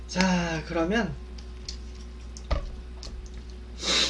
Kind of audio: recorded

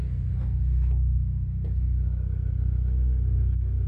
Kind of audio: remade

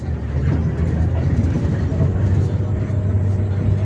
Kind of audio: recorded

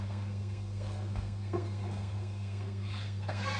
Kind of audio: remade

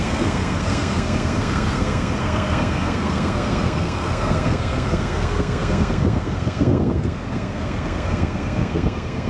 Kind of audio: remade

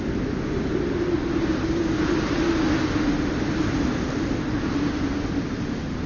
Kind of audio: recorded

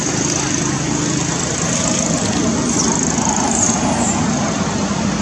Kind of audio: recorded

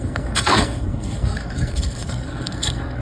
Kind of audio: remade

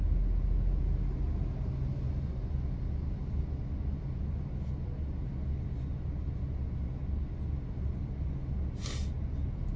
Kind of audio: recorded